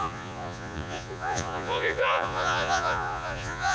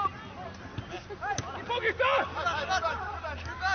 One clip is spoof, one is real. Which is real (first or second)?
second